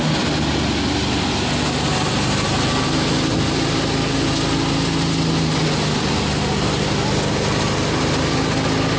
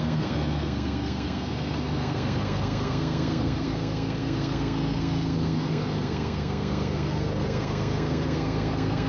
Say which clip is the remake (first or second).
second